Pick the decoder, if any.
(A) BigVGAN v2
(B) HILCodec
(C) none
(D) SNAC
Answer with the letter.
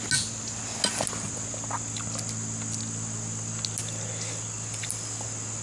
C